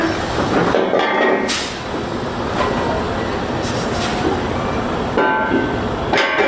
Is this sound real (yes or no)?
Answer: yes